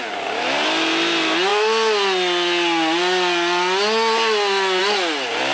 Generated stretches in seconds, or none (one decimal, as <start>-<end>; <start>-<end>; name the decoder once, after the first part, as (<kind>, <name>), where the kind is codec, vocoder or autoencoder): none